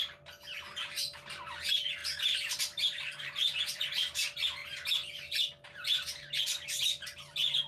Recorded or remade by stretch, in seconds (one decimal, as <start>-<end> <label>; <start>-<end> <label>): 0.0-2.0 recorded; 2.0-3.7 remade; 3.7-7.7 recorded